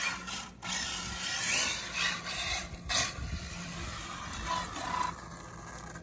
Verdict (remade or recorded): recorded